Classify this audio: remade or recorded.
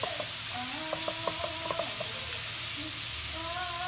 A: recorded